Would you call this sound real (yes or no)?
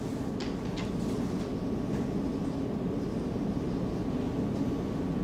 yes